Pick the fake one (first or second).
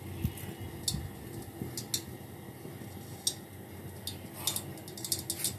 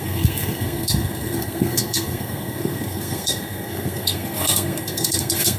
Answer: second